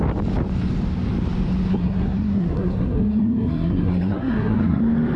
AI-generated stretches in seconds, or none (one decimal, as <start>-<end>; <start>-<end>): 1.7-4.8